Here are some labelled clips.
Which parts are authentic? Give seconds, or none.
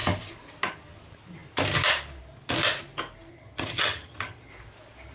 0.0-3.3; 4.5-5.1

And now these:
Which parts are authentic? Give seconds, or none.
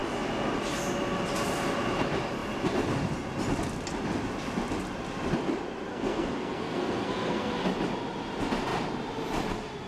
0.0-5.9; 7.5-9.9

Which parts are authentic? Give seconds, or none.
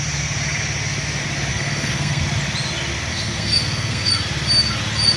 0.0-1.5; 2.2-3.1; 4.1-5.2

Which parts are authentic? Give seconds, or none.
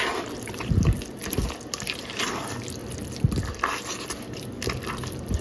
2.8-4.0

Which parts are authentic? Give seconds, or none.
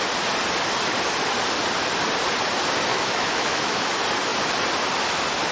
0.0-2.9; 3.9-5.5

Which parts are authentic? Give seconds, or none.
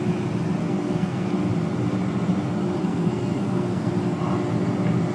0.0-0.6; 1.3-2.8; 3.9-5.1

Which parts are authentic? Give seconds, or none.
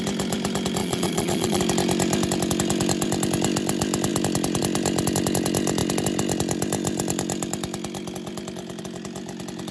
0.0-0.8; 1.6-9.7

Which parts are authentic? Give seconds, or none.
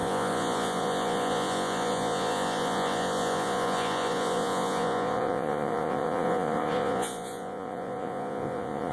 none